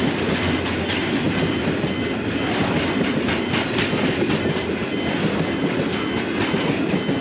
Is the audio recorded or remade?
recorded